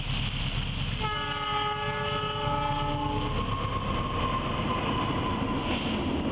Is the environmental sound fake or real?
real